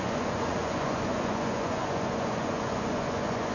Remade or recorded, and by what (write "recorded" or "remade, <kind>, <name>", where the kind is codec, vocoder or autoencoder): remade, vocoder, Vocos